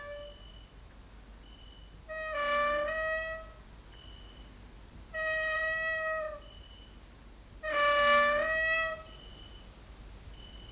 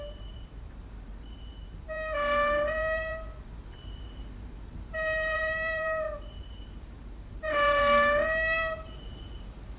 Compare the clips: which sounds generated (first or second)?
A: second